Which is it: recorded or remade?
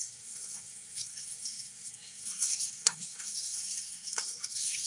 remade